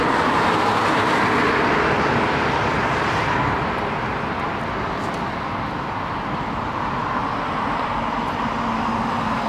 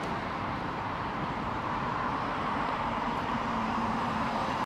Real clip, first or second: first